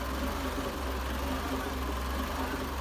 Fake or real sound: real